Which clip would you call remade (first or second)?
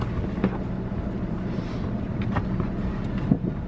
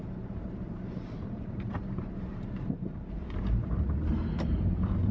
second